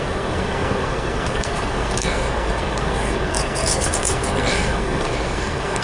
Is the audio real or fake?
fake